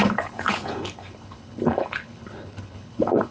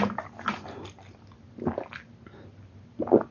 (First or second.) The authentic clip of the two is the second